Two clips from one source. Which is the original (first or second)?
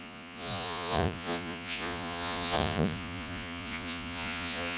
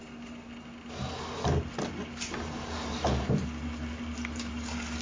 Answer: second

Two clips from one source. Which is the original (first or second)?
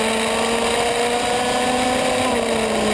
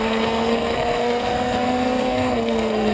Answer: first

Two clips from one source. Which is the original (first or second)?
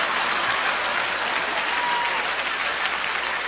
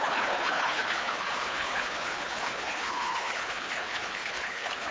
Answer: first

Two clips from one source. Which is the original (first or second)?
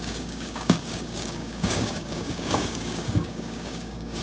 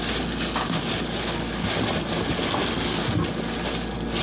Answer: second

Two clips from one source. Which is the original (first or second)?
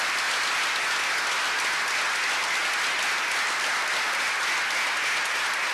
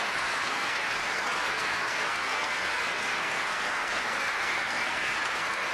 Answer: first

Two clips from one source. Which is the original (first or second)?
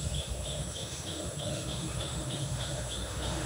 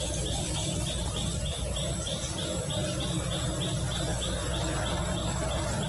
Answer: second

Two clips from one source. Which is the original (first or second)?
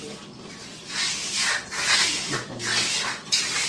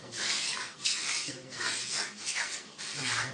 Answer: first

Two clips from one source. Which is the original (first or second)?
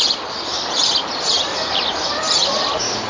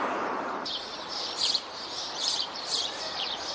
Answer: first